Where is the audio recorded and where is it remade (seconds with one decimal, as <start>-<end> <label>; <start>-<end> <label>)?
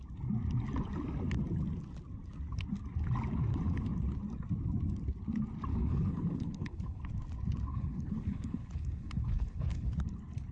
0.0-5.7 recorded; 5.7-7.0 remade; 7.0-7.7 recorded; 7.7-9.9 remade; 9.9-10.5 recorded